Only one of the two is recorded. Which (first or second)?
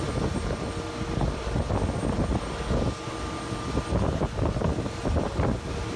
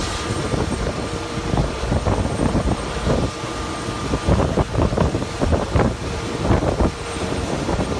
first